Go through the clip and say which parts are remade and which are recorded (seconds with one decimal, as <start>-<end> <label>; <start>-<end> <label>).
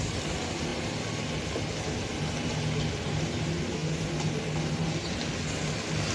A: 0.0-6.1 recorded